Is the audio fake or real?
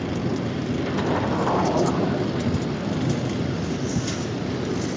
real